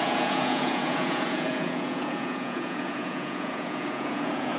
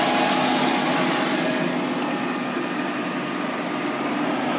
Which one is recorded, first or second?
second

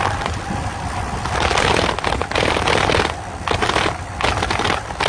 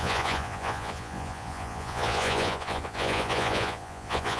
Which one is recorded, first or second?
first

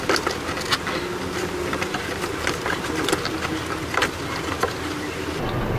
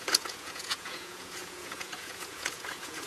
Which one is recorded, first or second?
first